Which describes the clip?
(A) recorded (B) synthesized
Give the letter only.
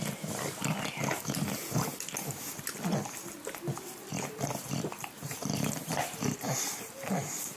B